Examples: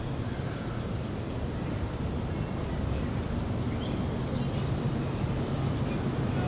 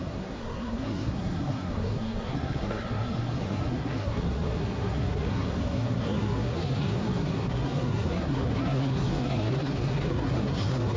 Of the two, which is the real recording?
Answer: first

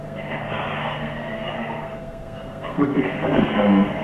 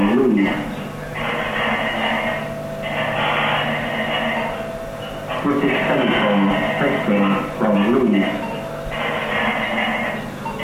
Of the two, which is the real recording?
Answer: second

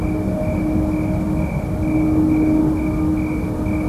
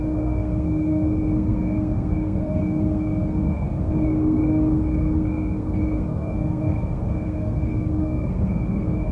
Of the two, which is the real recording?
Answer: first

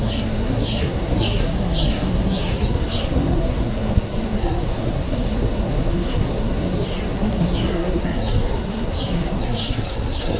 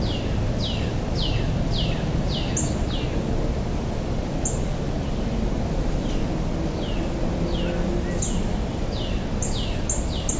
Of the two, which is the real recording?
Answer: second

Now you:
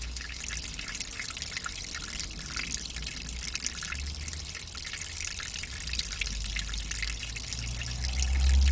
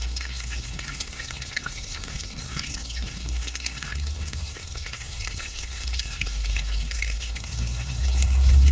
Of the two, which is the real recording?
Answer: first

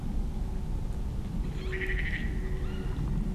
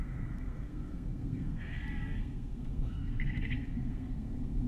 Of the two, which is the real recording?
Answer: first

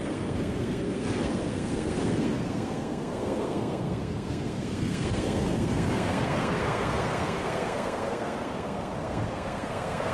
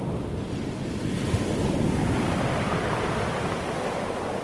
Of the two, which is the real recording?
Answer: second